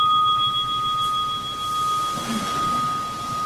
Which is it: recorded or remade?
recorded